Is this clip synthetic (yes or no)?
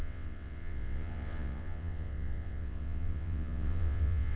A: yes